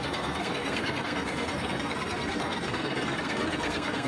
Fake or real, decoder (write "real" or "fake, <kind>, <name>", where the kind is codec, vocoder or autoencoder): fake, codec, SNAC